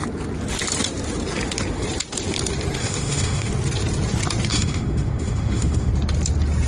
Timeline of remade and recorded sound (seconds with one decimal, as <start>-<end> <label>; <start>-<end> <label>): 0.0-2.8 recorded; 2.8-3.5 remade; 3.5-4.5 recorded; 4.5-5.9 remade; 5.9-6.7 recorded